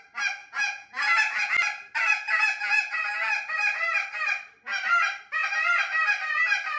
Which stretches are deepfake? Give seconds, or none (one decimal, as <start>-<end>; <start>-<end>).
0.4-1.5; 2.1-3.1